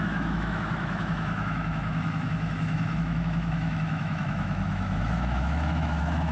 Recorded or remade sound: remade